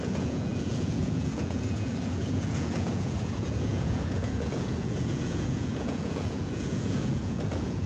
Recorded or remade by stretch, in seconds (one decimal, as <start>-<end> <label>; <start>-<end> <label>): 0.0-7.9 remade